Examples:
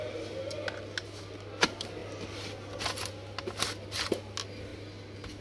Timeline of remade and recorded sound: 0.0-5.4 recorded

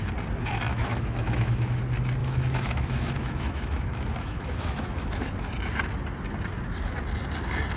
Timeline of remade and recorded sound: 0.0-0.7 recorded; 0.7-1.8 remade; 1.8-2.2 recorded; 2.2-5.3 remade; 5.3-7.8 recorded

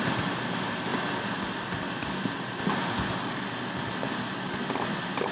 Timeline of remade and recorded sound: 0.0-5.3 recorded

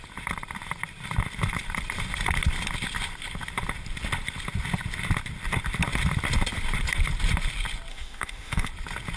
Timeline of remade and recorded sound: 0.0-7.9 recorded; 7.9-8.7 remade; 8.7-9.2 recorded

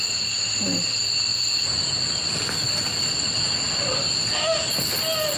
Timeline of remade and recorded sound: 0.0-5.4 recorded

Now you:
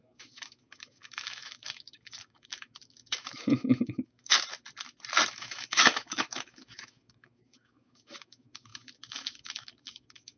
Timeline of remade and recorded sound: 0.0-4.3 remade; 4.3-5.3 recorded; 5.3-10.4 remade